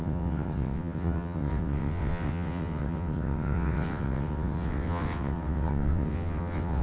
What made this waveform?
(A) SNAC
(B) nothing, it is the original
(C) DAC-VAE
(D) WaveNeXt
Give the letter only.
D